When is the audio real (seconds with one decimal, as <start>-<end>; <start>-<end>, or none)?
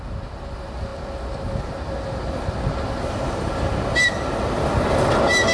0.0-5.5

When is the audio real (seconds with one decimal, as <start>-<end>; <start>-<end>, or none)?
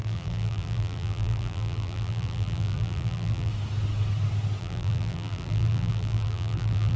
3.5-4.6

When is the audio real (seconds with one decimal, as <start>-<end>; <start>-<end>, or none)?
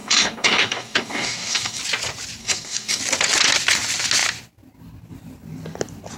1.8-2.4; 3.0-6.2